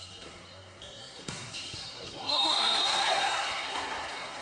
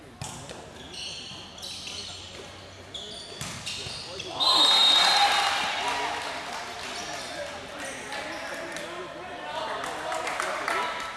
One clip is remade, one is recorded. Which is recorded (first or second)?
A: second